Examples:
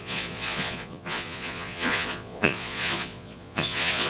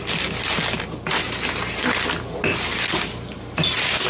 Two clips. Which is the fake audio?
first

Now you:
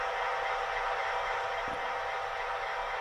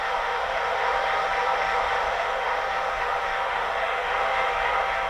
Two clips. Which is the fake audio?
second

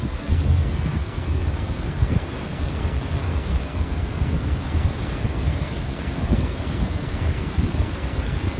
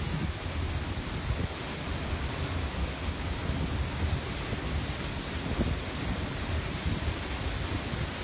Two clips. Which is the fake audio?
first